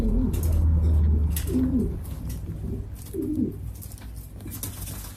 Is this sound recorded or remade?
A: recorded